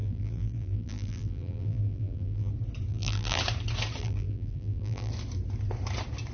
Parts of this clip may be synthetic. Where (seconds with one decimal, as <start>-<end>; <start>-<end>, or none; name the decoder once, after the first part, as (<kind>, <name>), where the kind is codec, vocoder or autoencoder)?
0.0-2.5 (vocoder, BigVGAN v2); 2.9-3.4; 4.0-5.1